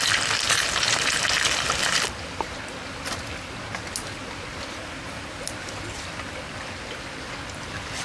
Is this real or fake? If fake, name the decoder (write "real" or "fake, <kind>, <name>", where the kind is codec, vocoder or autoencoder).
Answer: real